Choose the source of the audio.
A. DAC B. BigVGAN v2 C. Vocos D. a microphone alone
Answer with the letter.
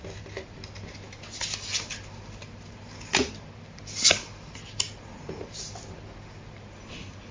D